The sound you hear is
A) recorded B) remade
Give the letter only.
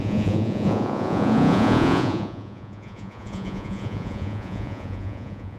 B